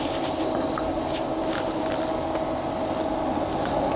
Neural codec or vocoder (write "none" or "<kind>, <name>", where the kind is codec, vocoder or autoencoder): none